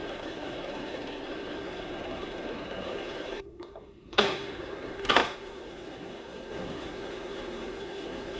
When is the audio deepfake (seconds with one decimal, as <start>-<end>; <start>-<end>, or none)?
0.0-8.4